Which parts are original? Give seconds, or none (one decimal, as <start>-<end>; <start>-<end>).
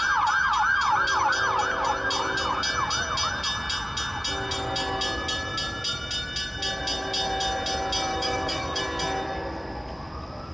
0.0-8.1; 8.8-10.5